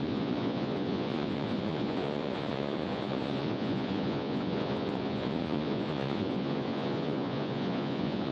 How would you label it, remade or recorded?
remade